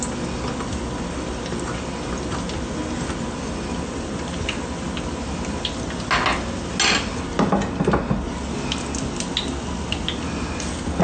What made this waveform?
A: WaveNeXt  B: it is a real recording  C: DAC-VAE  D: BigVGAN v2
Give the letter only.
B